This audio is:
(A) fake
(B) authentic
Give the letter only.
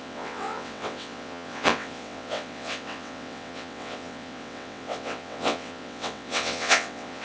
A